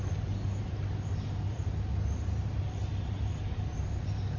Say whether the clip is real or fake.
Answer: real